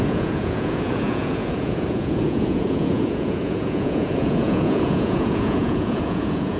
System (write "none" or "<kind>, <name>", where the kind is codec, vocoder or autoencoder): vocoder, Vocos